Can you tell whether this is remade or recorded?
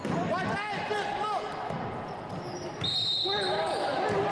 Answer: recorded